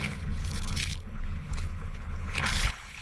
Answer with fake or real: fake